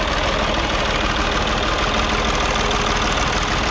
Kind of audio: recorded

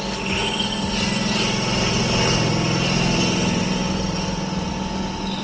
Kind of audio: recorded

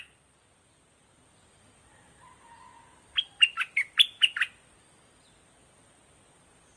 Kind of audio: recorded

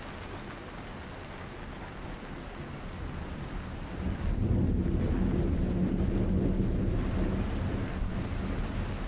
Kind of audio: recorded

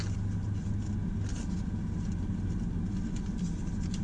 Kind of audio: recorded